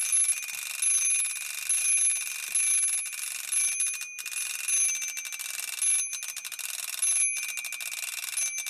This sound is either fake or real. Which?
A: real